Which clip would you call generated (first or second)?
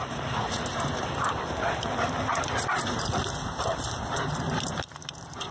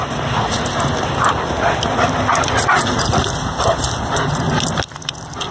first